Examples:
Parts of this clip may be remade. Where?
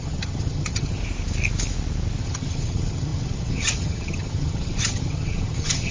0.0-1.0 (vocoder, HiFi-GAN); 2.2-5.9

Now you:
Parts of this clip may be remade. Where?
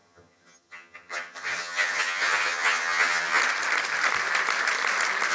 0.0-3.4 (vocoder, HiFi-GAN)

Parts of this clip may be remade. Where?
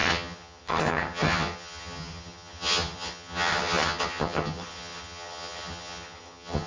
0.0-6.7 (vocoder, HiFi-GAN)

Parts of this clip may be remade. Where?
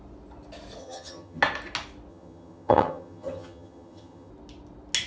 0.8-1.4 (vocoder, HiFi-GAN); 2.1-4.3